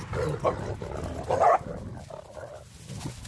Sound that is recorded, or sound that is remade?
recorded